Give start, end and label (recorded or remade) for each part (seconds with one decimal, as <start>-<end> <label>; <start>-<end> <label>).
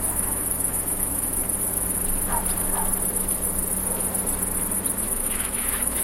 0.0-1.4 remade; 1.4-5.0 recorded; 5.0-6.0 remade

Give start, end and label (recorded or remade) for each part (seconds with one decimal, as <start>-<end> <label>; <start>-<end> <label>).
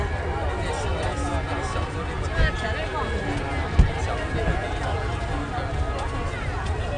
0.0-7.0 recorded